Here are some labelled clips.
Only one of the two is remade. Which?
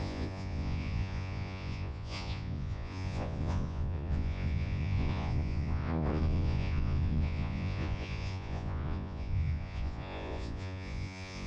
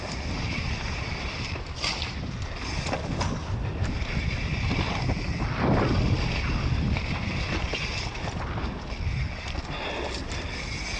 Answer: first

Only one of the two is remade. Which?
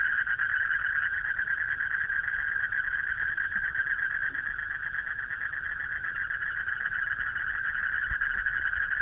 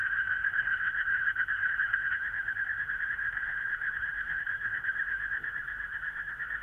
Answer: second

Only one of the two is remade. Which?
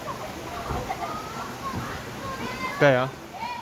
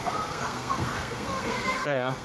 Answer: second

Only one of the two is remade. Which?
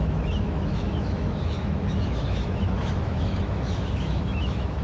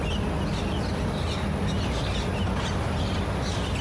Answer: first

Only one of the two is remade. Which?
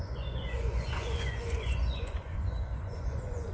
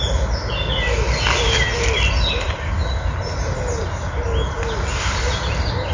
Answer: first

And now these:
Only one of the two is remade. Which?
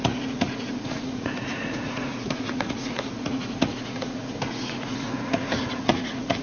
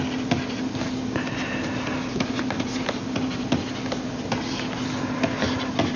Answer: first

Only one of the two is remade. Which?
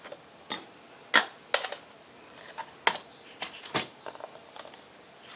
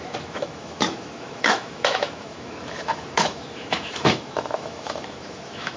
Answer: second